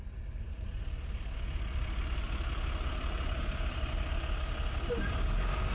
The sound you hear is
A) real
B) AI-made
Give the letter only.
A